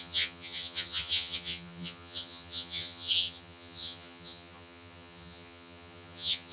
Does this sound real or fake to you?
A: fake